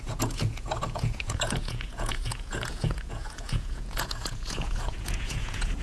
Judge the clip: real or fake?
fake